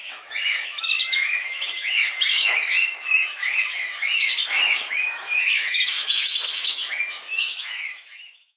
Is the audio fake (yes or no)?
yes